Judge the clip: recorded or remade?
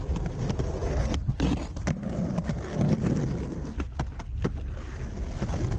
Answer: recorded